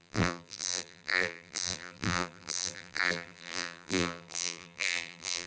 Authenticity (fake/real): fake